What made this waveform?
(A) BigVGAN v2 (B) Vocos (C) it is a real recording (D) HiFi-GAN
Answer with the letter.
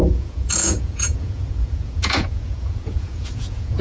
B